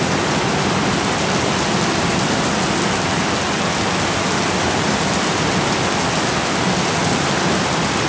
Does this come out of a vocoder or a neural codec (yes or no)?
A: no